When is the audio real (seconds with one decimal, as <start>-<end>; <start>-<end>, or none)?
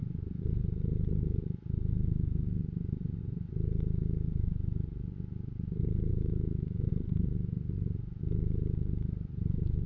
0.0-6.1; 6.9-9.9